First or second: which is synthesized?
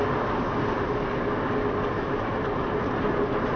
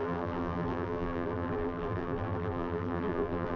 second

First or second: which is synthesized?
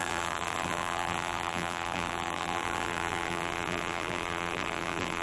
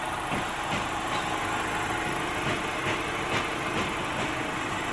first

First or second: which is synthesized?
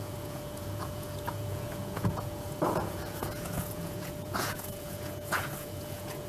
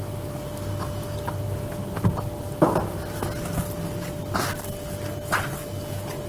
first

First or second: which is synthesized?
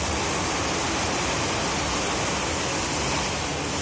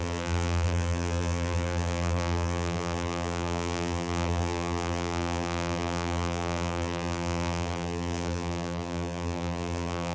second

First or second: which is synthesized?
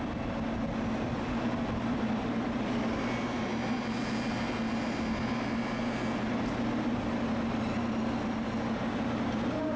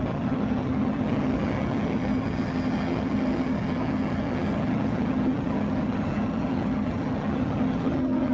second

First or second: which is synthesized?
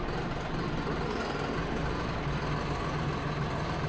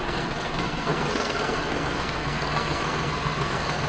second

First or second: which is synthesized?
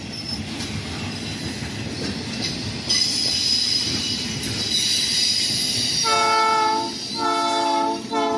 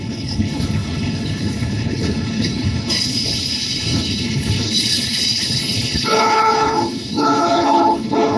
second